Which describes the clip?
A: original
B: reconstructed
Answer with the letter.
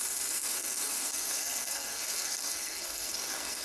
B